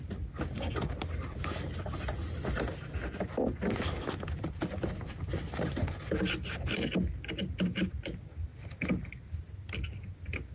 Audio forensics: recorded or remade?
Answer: recorded